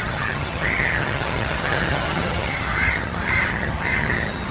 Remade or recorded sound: remade